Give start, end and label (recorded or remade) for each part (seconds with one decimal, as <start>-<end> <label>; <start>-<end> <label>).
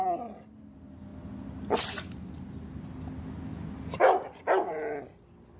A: 0.0-5.6 recorded